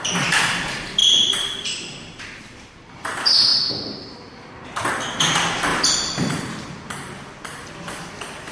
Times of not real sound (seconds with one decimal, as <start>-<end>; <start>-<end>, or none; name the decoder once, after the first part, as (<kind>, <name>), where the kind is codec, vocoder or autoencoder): 0.0-3.5 (vocoder, BigVGAN v2); 5.2-8.5

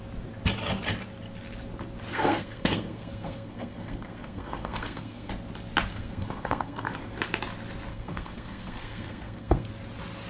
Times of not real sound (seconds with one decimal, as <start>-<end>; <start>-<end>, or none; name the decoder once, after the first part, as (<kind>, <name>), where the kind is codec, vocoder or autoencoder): 2.1-5.3 (codec, SNAC); 5.9-7.0; 7.9-9.7

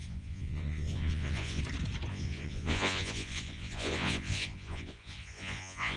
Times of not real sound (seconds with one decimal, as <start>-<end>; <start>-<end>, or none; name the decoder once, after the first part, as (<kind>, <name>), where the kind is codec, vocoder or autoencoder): 0.0-1.6 (vocoder, Vocos); 2.1-6.0

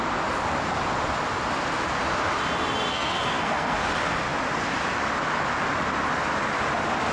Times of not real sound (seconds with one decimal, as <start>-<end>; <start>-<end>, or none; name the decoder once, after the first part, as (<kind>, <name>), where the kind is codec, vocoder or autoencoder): 2.9-3.8 (codec, SNAC)